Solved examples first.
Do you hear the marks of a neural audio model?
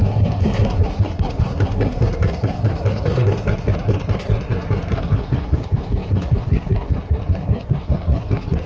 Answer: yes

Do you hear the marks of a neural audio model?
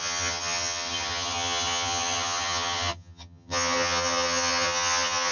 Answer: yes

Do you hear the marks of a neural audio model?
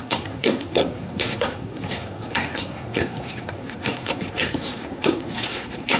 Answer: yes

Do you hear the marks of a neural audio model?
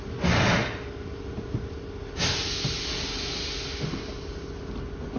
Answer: no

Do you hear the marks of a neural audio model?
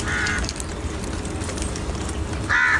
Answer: no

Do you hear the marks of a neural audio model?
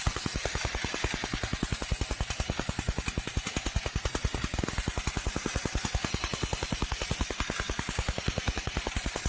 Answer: no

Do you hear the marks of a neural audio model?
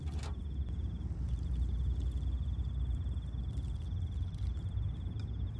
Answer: no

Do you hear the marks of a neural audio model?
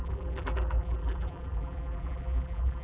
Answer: yes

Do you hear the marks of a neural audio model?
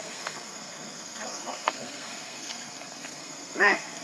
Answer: yes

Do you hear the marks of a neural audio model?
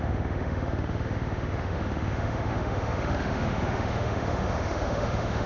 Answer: yes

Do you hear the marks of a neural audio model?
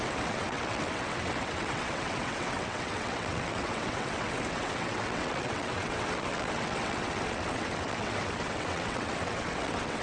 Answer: yes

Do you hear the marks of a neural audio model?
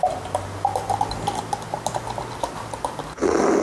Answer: no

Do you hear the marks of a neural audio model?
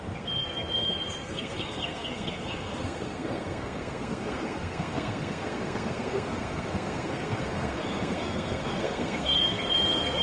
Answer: yes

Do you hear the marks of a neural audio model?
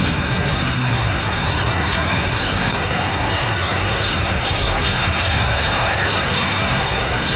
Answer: yes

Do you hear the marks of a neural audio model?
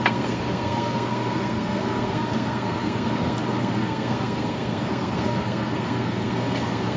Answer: yes